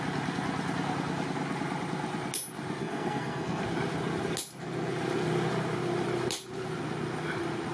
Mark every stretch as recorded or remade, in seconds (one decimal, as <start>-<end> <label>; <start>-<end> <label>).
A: 0.0-2.8 recorded; 2.8-3.6 remade; 3.6-7.7 recorded